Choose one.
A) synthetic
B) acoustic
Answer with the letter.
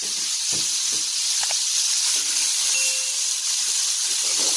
B